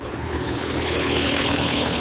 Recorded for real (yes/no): no